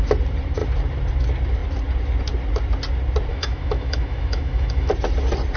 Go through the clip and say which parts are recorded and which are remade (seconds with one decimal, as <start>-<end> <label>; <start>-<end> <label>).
0.0-3.3 recorded; 3.3-4.9 remade; 4.9-5.6 recorded